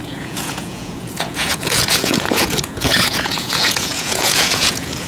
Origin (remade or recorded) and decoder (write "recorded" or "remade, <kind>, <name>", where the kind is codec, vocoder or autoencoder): remade, vocoder, Vocos